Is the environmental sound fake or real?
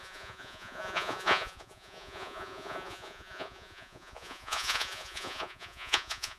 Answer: fake